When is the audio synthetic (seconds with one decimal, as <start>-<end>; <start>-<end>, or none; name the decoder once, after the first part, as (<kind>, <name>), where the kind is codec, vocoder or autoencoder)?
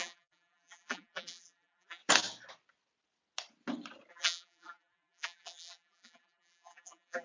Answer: 0.0-2.0 (vocoder, BigVGAN v2); 4.1-7.2